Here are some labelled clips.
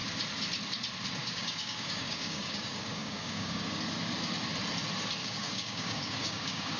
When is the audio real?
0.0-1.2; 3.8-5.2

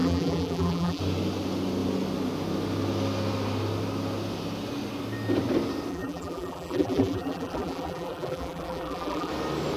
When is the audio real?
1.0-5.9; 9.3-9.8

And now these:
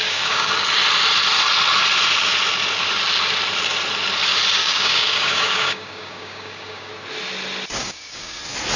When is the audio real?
0.5-4.6; 6.9-7.8; 8.4-8.8